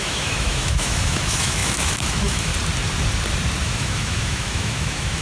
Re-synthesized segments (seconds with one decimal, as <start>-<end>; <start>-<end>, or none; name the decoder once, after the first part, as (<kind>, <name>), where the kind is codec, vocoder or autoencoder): 0.0-2.5 (autoencoder, DAC-VAE); 3.6-5.2